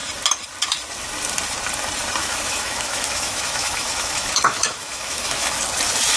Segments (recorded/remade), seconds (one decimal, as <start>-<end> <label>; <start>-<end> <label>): 0.0-2.2 recorded; 2.2-5.6 remade; 5.6-6.2 recorded